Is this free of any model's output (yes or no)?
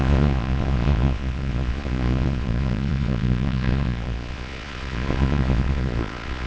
no